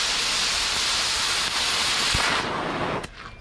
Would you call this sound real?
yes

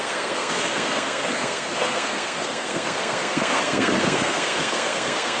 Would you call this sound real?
no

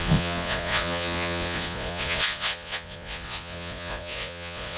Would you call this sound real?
no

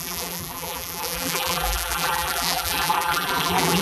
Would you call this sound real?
no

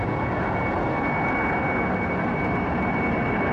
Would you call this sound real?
yes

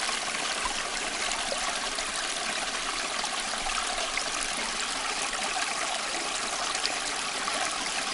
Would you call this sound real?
yes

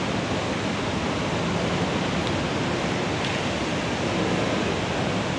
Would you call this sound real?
yes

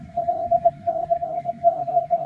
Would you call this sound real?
no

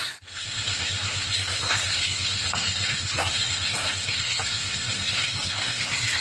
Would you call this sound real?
no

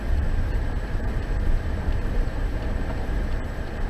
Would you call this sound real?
no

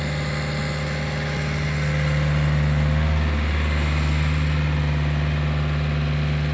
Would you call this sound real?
yes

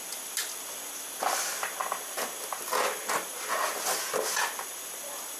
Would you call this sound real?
yes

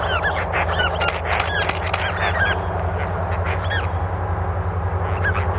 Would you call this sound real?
yes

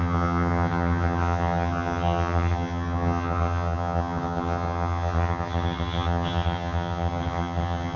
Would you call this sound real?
no